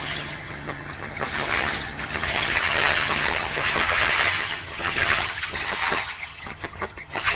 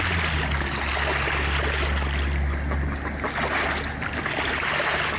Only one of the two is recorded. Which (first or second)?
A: second